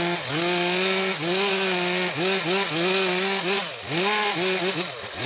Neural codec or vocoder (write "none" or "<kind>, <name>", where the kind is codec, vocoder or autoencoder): none